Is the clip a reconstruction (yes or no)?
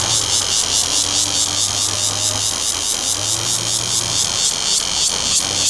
no